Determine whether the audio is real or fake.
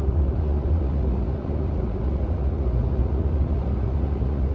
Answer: fake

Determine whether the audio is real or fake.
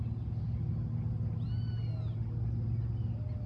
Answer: real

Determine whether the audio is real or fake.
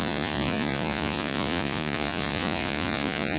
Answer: fake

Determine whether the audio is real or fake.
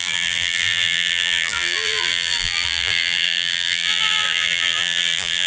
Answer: fake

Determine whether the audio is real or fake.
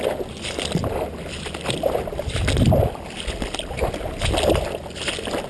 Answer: real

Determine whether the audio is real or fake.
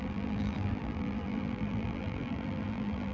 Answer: fake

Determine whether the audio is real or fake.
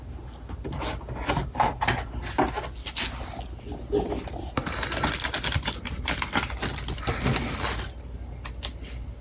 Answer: real